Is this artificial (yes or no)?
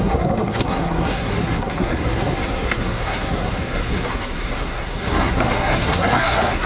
yes